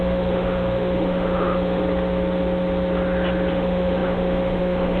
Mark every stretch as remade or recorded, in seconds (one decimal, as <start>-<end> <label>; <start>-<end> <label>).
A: 0.0-1.8 remade; 1.8-3.5 recorded; 3.5-5.0 remade